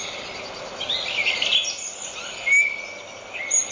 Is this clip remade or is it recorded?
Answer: recorded